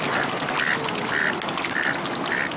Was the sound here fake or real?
real